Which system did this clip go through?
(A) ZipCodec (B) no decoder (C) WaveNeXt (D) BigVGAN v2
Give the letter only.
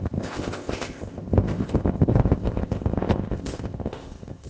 A